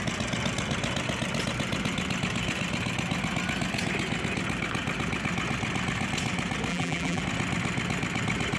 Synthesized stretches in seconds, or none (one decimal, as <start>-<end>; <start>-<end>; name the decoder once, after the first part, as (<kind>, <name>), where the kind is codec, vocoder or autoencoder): 6.7-7.2 (vocoder, BigVGAN v2)

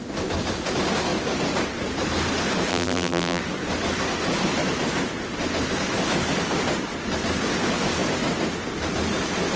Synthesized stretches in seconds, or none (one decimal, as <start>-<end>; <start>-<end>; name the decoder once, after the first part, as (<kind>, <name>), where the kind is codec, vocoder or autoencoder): 2.7-3.4 (vocoder, BigVGAN v2)